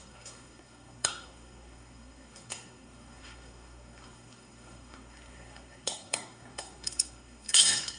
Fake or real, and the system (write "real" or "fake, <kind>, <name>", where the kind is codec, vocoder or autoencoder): fake, codec, SNAC